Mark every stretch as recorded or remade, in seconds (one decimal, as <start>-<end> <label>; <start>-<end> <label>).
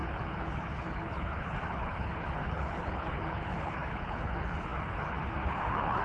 0.0-6.0 remade